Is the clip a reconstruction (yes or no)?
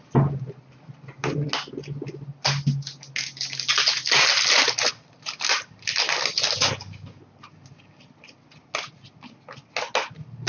no